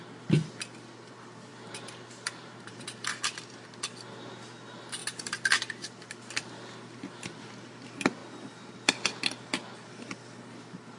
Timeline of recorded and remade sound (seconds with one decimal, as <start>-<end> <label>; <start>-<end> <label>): 0.0-1.5 recorded; 1.5-2.7 remade; 2.7-5.0 recorded; 5.0-5.6 remade; 5.6-11.0 recorded